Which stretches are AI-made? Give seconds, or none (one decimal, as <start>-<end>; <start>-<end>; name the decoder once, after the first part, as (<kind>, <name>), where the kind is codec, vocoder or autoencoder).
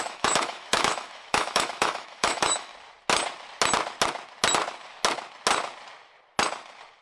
0.0-2.7 (autoencoder, DAC-VAE)